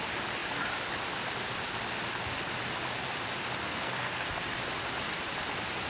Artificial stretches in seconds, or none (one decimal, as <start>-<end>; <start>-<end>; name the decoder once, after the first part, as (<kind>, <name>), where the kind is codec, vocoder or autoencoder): 3.6-4.3 (codec, SNAC)